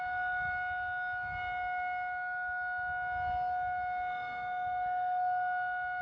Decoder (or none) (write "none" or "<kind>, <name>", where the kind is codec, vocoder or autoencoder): none